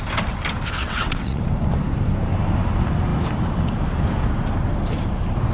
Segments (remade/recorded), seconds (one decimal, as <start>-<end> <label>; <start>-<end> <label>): 0.0-0.8 recorded; 0.8-1.4 remade; 1.4-5.5 recorded